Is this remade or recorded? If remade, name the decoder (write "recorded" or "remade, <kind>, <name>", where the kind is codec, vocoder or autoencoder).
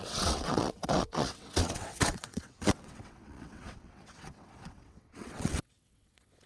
remade, vocoder, WaveNeXt